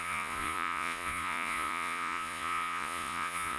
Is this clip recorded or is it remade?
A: remade